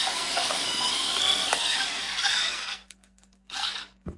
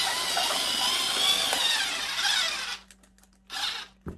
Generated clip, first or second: first